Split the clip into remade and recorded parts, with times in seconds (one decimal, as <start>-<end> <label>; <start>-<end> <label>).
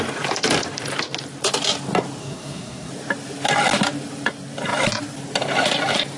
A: 0.0-2.2 recorded; 2.2-2.9 remade; 2.9-6.2 recorded